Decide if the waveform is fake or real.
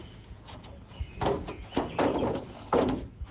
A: fake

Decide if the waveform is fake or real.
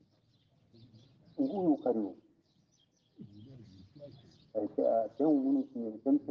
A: real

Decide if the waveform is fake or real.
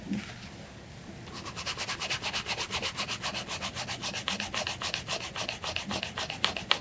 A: real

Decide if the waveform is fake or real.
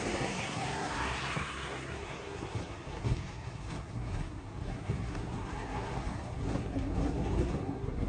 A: fake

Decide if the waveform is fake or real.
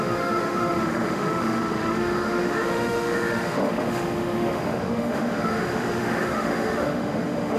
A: fake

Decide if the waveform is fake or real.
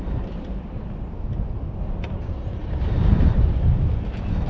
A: fake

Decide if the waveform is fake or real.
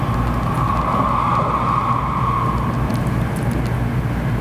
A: real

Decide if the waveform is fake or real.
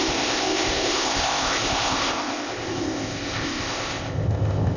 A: fake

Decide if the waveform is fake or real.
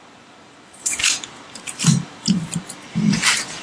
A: fake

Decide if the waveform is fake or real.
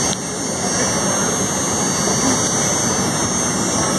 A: real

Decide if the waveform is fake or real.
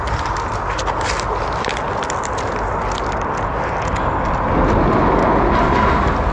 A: real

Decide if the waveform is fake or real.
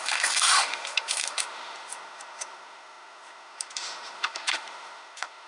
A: fake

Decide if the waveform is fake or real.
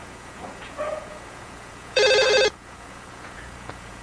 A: fake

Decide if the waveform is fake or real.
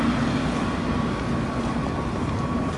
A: real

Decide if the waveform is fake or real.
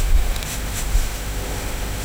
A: fake